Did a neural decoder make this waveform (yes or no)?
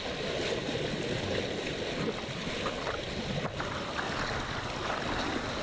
no